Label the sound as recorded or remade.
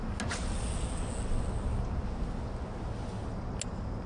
recorded